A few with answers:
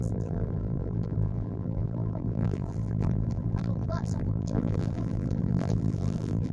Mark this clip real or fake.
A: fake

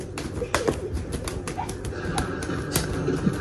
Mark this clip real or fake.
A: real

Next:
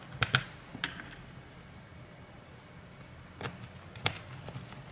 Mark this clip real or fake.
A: real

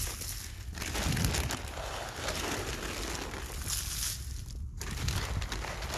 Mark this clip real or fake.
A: real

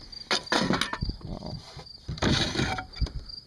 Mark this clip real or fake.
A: real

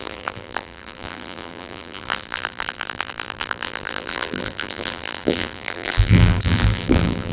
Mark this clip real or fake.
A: fake